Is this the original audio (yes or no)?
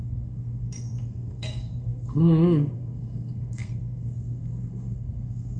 no